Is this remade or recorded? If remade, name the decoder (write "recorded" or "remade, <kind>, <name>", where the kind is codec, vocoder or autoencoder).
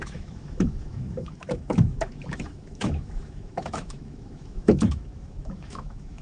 remade, autoencoder, DAC-VAE